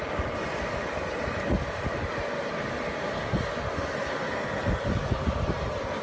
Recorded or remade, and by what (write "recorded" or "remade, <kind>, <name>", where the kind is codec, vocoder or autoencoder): recorded